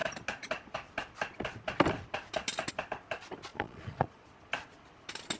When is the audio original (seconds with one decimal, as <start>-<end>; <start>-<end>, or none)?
0.0-3.5; 4.5-5.4